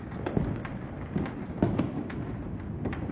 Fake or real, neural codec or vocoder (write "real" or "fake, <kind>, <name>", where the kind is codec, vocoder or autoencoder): real